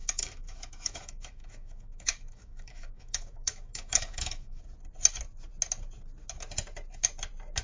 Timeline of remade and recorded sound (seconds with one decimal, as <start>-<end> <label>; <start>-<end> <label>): 0.0-4.6 remade; 4.6-7.6 recorded